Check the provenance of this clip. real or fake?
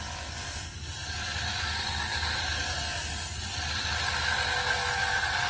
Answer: real